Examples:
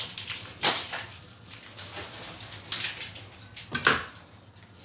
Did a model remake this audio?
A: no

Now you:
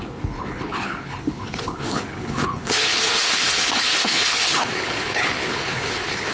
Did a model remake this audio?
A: yes